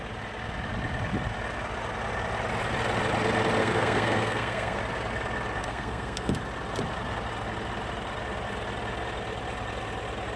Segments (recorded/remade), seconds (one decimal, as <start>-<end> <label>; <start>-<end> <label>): 0.0-3.6 recorded; 3.6-4.8 remade; 4.8-5.6 recorded; 5.6-6.3 remade; 6.3-10.4 recorded